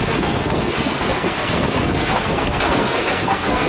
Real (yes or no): no